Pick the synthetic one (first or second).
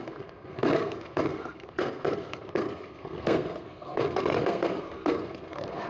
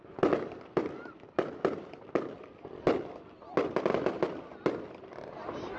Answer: first